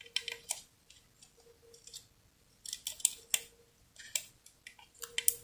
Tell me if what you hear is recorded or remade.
recorded